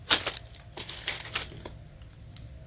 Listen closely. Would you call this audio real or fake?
real